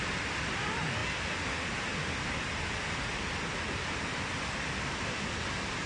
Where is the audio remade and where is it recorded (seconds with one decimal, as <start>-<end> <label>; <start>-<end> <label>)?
0.0-5.9 recorded